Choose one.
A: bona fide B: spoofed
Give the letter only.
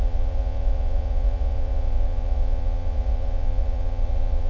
B